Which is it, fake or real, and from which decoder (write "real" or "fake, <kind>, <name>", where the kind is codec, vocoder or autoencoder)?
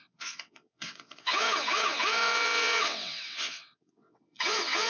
fake, vocoder, WaveNeXt